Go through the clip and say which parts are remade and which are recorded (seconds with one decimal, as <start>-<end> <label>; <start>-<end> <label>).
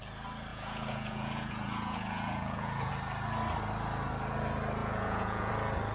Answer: 0.0-0.5 recorded; 0.5-2.9 remade; 2.9-4.8 recorded; 4.8-5.5 remade; 5.5-5.9 recorded